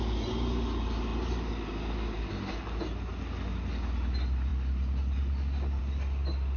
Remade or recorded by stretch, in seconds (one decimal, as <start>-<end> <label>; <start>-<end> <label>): 0.0-6.6 recorded